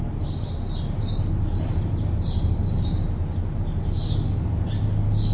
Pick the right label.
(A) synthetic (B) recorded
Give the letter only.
B